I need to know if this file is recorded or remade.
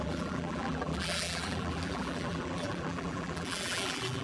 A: remade